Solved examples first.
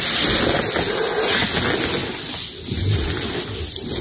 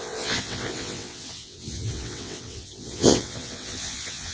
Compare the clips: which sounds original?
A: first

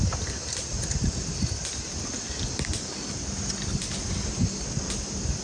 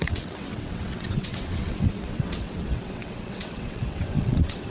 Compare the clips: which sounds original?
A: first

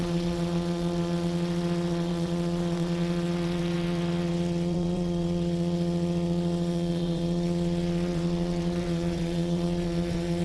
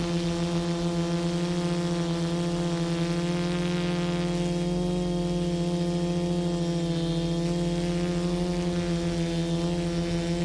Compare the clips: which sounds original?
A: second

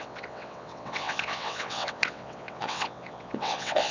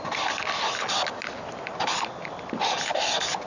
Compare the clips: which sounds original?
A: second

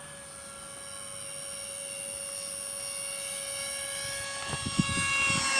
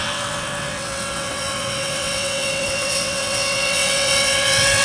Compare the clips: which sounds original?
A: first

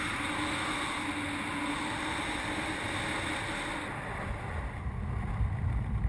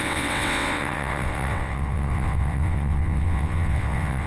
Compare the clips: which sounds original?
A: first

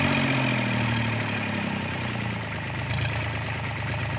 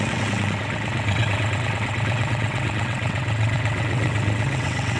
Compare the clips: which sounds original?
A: first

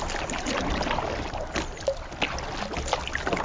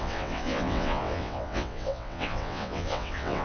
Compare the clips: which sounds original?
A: first